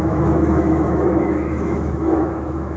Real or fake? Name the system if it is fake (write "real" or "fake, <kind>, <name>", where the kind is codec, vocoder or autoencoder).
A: fake, autoencoder, DAC-VAE